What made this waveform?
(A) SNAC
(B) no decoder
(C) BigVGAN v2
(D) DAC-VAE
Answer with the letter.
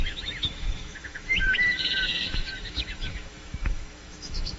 D